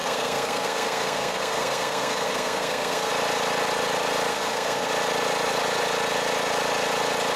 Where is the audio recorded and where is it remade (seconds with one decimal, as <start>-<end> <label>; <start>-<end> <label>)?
0.0-3.1 remade; 3.1-4.3 recorded; 4.3-4.9 remade; 4.9-7.4 recorded